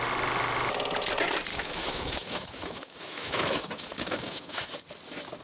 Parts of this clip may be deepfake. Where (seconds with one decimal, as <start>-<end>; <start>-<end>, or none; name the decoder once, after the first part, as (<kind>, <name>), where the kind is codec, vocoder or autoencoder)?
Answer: 1.5-4.7 (autoencoder, DAC-VAE)